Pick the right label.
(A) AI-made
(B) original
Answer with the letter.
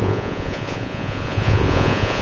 A